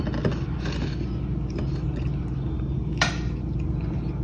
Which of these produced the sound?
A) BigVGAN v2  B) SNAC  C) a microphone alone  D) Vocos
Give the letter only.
C